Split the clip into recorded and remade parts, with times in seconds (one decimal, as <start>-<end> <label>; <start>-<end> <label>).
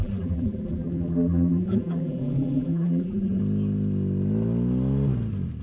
0.0-3.4 remade; 3.4-5.6 recorded